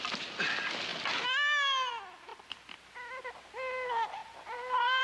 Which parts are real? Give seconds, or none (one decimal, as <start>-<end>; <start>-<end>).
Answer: 0.0-4.2